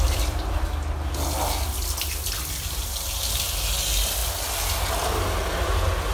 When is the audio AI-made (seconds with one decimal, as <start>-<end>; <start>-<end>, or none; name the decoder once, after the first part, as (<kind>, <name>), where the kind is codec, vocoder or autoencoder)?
none